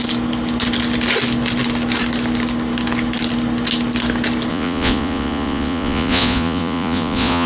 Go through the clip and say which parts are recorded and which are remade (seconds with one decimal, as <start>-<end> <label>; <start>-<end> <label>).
0.0-4.5 recorded; 4.5-7.5 remade